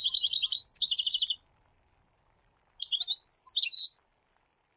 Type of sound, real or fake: real